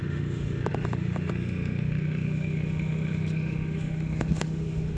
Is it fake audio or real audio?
fake